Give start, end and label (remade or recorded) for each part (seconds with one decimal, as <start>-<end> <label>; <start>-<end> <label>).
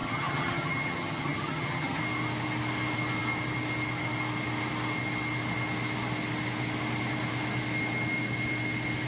0.0-2.0 remade; 2.0-9.1 recorded